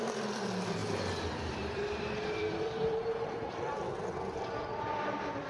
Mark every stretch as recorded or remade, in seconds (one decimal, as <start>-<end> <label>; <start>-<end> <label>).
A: 0.0-3.7 remade; 3.7-4.9 recorded; 4.9-5.5 remade